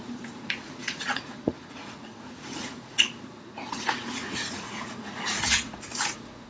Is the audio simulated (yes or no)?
yes